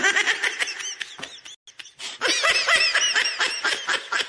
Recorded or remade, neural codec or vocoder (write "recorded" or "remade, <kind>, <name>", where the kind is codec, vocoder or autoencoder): recorded